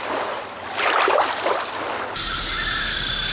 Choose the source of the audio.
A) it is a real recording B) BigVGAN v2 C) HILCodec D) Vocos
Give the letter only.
A